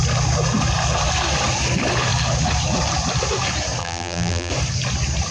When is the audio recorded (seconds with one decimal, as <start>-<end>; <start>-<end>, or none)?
0.0-3.8; 4.5-5.3